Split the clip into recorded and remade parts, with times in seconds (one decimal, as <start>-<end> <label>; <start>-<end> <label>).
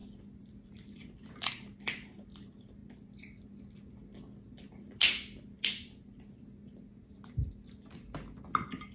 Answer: 0.0-1.3 remade; 1.3-8.9 recorded